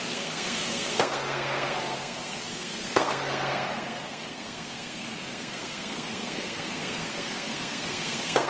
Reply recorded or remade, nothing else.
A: remade